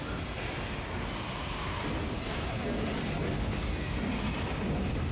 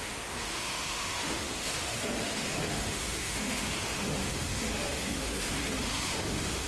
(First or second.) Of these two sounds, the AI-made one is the second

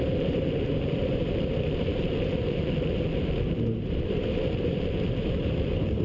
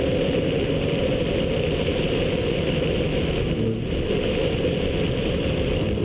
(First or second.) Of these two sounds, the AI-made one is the first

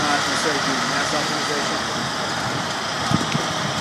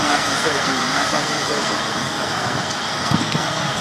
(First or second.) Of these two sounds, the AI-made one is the second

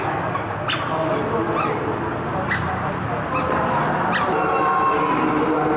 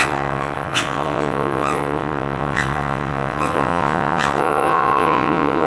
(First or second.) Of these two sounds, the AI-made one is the second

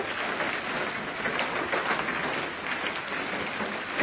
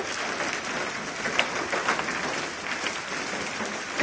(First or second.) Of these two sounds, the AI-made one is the second